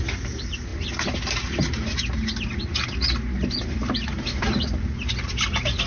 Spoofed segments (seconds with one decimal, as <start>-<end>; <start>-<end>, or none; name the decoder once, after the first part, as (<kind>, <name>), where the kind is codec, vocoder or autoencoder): none